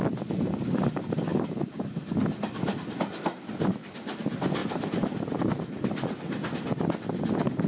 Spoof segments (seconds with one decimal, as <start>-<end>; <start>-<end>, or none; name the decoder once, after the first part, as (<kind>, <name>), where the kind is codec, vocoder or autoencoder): none